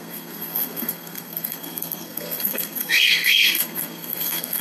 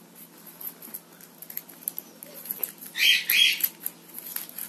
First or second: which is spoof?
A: first